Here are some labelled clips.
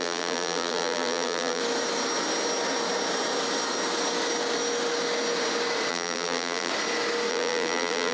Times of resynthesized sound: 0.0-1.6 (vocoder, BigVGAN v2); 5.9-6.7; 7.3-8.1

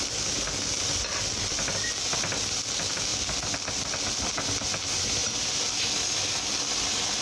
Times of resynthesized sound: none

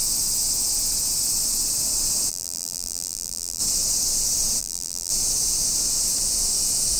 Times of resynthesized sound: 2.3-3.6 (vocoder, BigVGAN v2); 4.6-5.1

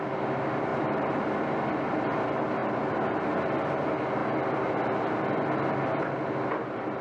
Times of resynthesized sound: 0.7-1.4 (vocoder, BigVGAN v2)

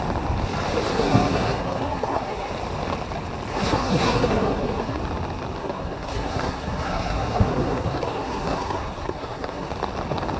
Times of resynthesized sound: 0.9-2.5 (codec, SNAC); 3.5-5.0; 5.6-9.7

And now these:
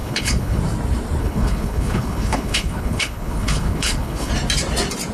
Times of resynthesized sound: 0.0-0.6 (codec, HILCodec); 1.2-4.3